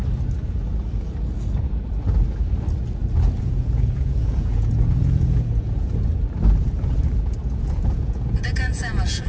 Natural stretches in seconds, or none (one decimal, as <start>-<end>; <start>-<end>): 0.0-3.4; 6.1-7.6